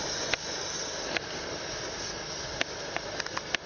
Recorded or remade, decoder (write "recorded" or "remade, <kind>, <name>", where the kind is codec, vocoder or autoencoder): recorded